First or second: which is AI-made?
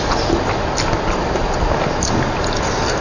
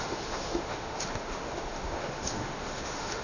second